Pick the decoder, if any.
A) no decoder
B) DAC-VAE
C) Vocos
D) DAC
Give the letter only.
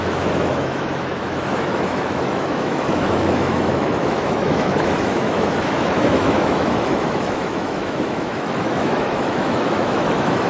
B